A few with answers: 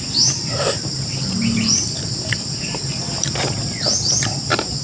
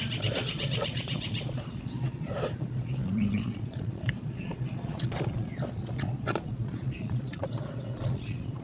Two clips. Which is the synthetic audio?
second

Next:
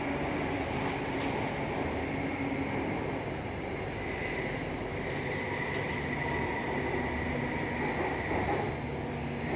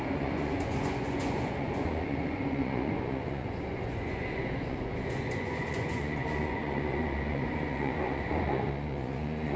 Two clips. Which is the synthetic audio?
second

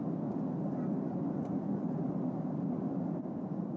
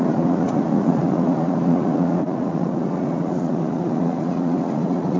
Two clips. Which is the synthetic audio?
second